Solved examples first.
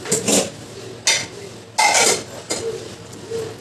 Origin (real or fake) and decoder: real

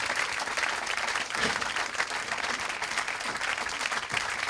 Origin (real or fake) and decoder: real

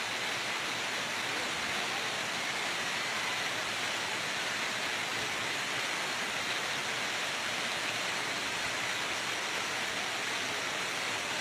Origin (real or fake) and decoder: real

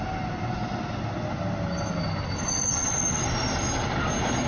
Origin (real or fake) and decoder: real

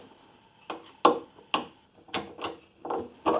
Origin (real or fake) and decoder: real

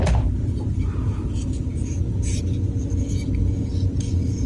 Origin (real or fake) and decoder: real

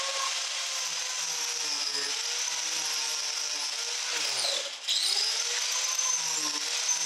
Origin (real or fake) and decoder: real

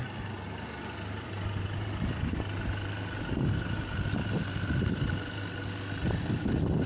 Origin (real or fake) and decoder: real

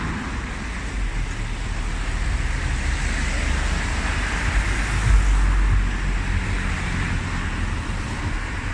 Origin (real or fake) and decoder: real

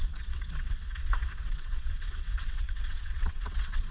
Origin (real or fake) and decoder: fake, vocoder, WaveNeXt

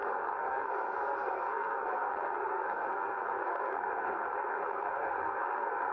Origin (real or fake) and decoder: fake, codec, SNAC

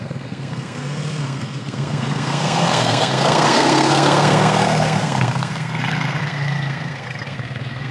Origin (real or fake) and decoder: fake, codec, SNAC